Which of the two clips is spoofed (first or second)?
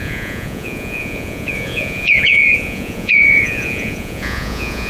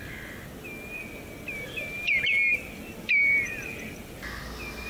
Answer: first